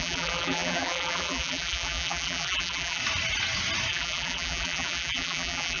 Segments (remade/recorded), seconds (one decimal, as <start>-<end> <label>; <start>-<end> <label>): 0.0-3.0 remade; 3.0-3.9 recorded; 3.9-5.8 remade

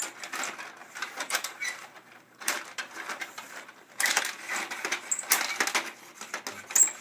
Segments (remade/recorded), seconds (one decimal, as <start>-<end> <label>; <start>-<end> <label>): 0.0-0.8 recorded; 0.8-4.2 remade; 4.2-7.0 recorded

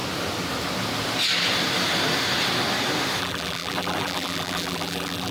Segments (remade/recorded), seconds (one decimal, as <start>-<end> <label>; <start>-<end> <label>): 0.0-3.2 recorded; 3.2-5.3 remade

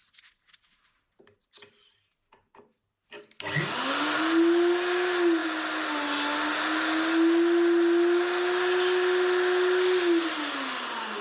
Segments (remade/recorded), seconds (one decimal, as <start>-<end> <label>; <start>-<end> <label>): 0.0-11.2 recorded

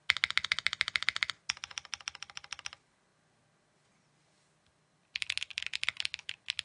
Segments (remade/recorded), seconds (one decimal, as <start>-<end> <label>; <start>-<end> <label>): 0.0-6.6 recorded